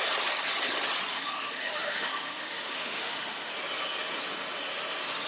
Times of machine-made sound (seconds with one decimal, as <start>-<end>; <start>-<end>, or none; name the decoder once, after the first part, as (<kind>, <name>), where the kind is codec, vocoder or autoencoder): 1.1-3.5 (autoencoder, DAC-VAE)

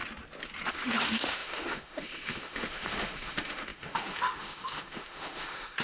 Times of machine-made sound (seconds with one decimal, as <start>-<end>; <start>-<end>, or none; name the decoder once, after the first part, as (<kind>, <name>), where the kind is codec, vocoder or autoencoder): 0.7-5.8 (autoencoder, DAC-VAE)

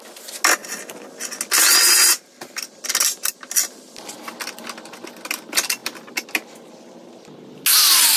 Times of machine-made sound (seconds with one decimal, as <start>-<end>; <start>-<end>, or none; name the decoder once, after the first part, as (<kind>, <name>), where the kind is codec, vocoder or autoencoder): none

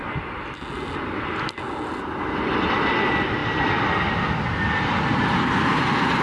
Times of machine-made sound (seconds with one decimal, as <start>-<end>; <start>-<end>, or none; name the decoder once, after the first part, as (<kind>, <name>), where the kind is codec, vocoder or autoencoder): none

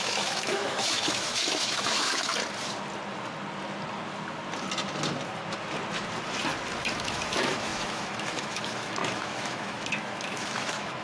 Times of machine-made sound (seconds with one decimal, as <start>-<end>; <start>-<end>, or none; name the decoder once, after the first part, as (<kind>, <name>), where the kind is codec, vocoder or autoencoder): 0.0-2.3 (autoencoder, DAC-VAE); 6.9-11.0